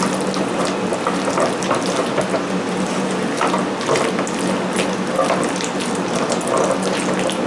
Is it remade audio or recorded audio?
recorded